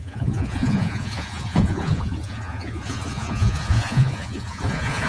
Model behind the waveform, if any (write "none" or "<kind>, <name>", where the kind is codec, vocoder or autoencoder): vocoder, Vocos